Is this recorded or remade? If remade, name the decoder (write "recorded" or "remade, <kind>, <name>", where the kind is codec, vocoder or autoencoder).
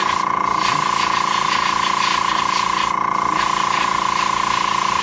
recorded